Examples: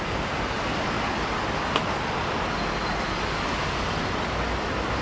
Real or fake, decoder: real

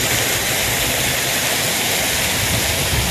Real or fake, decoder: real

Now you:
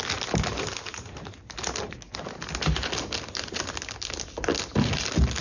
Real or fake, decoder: real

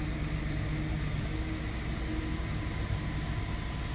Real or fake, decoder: real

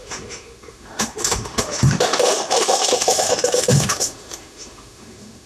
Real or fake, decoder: fake, autoencoder, DAC-VAE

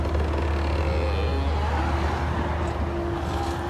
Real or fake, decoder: real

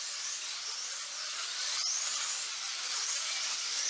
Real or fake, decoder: fake, vocoder, BigVGAN v2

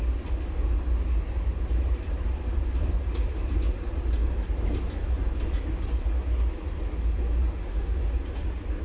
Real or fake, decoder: real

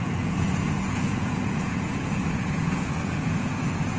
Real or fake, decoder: fake, vocoder, Vocos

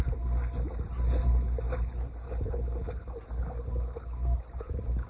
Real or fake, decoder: real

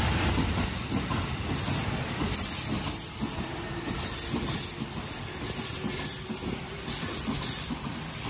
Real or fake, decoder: fake, vocoder, BigVGAN v2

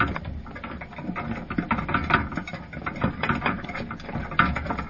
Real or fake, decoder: real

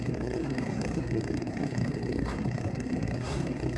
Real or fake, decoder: fake, codec, SNAC